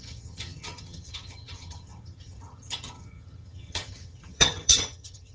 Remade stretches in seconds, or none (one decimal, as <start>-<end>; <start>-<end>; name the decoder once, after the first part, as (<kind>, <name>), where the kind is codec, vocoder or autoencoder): 0.0-5.3 (vocoder, HiFi-GAN)